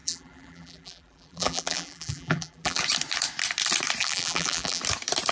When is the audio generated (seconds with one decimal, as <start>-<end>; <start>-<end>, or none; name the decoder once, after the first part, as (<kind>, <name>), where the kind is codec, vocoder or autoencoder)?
0.0-2.8 (vocoder, BigVGAN v2); 4.0-4.8